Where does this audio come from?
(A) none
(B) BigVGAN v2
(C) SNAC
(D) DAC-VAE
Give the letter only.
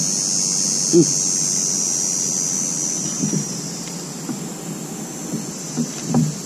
A